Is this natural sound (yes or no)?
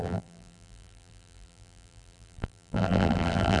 no